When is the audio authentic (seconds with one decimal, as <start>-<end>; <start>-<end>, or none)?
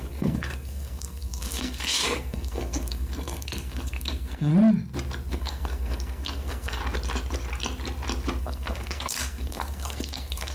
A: 4.5-5.3; 6.8-8.4